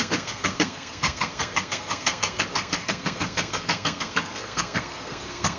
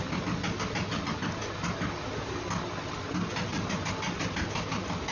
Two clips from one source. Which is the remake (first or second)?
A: first